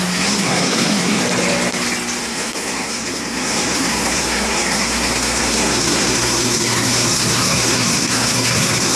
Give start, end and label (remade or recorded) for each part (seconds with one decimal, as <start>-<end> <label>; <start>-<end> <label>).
0.0-1.2 remade; 1.2-2.2 recorded; 2.2-9.0 remade